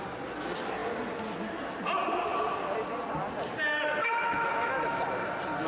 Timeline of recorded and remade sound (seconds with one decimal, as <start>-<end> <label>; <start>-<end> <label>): 0.0-4.0 recorded; 4.0-5.0 remade; 5.0-5.7 recorded